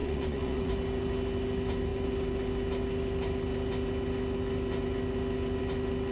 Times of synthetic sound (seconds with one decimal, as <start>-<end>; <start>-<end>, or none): 0.0-0.7